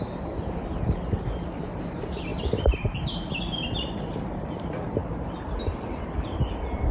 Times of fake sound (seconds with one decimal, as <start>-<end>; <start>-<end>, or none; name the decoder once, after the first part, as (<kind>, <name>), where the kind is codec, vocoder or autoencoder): 5.0-6.9 (vocoder, BigVGAN v2)